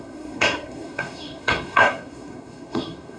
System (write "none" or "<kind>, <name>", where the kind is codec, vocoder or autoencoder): codec, SNAC